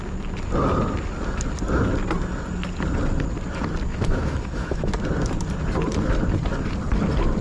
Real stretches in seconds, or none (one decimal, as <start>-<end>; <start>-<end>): 0.0-3.9; 4.9-7.4